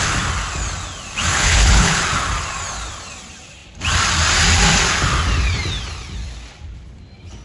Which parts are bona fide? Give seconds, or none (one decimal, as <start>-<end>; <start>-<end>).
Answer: 0.0-1.3; 2.0-7.4